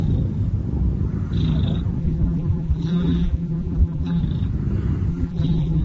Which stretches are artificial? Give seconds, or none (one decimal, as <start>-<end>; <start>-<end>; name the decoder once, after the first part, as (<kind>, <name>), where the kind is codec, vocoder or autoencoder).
2.0-4.2 (vocoder, BigVGAN v2); 5.1-5.8